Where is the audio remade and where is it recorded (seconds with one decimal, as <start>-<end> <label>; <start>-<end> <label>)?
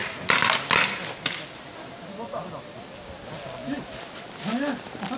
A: 0.0-5.2 recorded